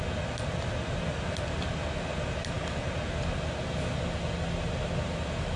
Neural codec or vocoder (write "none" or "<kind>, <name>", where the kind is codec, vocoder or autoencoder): none